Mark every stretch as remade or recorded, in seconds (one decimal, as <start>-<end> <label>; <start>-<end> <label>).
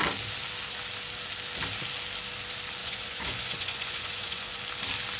0.0-2.8 recorded; 2.8-4.6 remade; 4.6-5.2 recorded